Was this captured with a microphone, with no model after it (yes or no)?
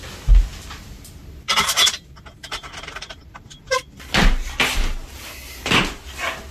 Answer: yes